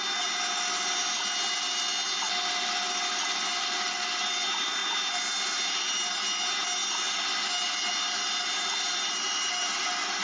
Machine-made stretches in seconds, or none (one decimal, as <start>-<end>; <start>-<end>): none